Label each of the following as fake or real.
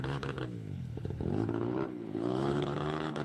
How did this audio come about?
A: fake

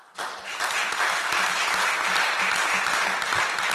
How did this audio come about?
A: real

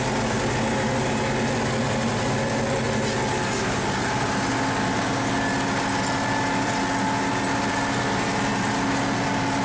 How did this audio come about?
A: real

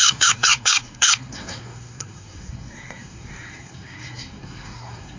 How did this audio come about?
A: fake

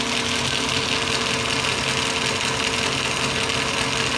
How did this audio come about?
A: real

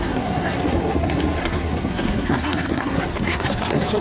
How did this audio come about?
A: fake